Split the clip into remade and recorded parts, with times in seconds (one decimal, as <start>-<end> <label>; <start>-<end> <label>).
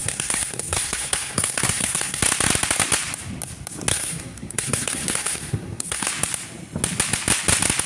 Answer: 0.0-2.2 remade; 2.2-3.9 recorded; 3.9-6.1 remade; 6.1-7.9 recorded